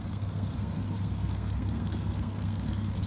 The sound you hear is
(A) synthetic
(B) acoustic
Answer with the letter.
A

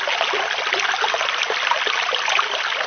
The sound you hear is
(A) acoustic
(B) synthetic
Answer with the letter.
A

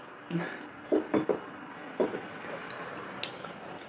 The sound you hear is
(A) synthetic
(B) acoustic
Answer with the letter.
B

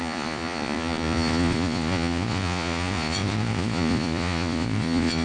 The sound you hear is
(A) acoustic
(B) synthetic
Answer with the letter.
B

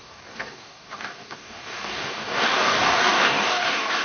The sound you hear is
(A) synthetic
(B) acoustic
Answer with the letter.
A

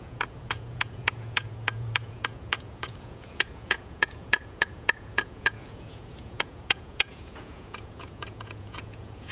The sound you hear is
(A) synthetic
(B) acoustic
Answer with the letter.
A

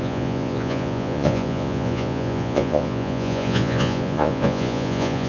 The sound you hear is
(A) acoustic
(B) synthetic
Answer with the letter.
B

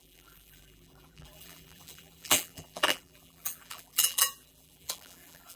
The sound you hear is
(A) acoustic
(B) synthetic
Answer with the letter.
B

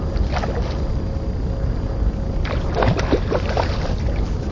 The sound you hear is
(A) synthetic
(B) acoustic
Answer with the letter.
B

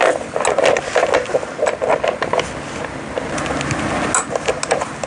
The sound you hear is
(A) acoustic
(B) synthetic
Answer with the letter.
A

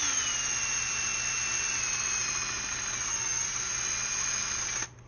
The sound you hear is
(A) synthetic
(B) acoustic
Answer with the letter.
B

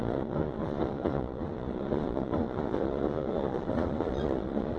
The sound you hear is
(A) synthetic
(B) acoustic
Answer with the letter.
A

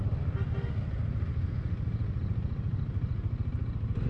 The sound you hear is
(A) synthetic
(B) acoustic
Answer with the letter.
B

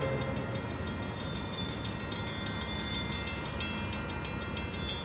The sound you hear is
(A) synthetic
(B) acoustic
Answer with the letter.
B